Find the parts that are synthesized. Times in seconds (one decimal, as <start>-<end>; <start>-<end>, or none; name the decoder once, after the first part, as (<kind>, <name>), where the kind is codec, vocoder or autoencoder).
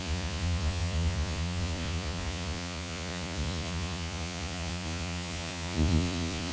0.0-6.5 (vocoder, Vocos)